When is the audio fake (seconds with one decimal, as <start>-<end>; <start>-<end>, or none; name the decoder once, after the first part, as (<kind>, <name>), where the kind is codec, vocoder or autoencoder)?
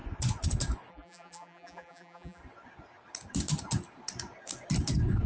0.9-2.4 (vocoder, BigVGAN v2)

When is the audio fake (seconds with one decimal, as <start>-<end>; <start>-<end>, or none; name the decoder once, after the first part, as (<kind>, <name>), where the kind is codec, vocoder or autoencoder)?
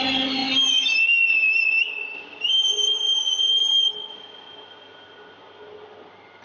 none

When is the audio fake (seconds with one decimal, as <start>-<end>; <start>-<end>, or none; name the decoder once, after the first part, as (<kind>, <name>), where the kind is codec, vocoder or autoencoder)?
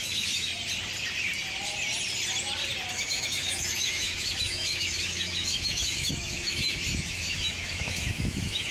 0.0-0.5 (autoencoder, DAC-VAE); 2.9-8.7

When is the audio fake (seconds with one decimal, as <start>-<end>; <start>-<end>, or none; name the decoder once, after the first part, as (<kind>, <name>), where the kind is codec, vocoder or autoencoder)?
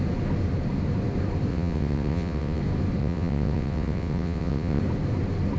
1.5-2.6 (vocoder, WaveNeXt); 3.0-4.8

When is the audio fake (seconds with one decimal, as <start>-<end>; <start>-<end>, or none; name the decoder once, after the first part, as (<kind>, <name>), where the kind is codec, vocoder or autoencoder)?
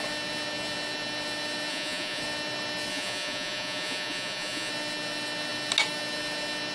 1.7-2.2 (vocoder, Vocos); 2.9-4.7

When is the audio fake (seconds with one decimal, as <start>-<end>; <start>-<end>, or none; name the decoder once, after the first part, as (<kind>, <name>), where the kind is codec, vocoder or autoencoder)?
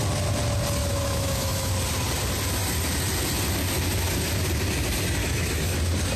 0.8-1.7 (autoencoder, DAC-VAE); 5.2-5.8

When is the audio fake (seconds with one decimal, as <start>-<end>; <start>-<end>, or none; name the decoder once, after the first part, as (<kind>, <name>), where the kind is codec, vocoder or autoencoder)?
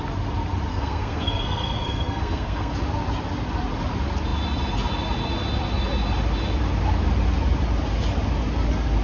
0.7-2.7 (codec, SNAC)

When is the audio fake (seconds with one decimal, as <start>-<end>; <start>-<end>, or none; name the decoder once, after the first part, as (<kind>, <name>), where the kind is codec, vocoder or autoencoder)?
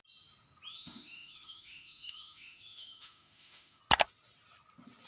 0.7-3.8 (autoencoder, DAC-VAE)